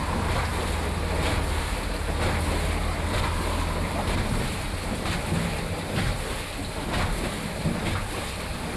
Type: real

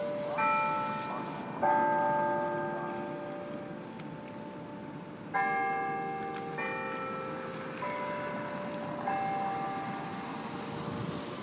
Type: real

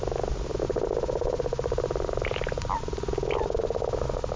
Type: real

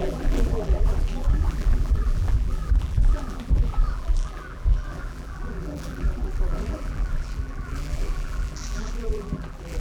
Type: fake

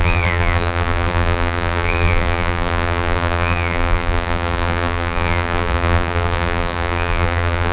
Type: fake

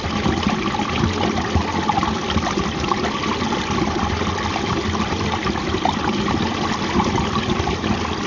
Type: real